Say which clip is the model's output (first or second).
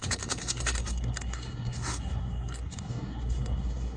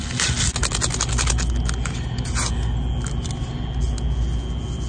first